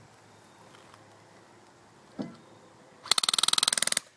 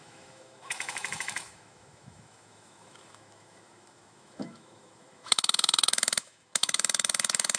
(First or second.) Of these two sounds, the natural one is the first